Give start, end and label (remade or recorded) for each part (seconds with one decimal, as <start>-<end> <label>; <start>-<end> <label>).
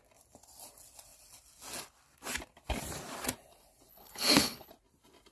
0.0-3.9 recorded; 3.9-4.7 remade; 4.7-5.3 recorded